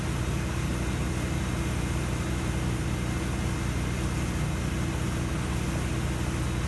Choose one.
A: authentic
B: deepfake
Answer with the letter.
A